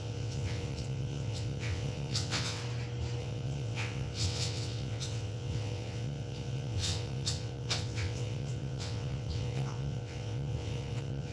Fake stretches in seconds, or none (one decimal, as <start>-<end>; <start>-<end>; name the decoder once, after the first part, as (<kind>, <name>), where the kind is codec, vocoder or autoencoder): 0.0-2.6 (vocoder, WaveNeXt); 3.2-11.3